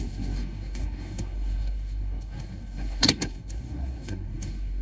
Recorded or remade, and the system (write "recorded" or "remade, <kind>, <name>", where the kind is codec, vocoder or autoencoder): remade, codec, SNAC